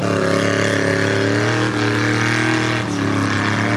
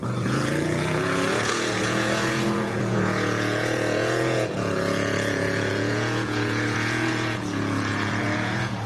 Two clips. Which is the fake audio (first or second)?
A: second